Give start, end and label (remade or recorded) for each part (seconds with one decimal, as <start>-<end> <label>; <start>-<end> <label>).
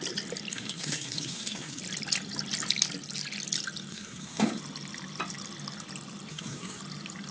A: 0.0-0.5 recorded; 0.5-1.8 remade; 1.8-3.9 recorded; 3.9-4.6 remade; 4.6-6.3 recorded; 6.3-6.8 remade; 6.8-7.3 recorded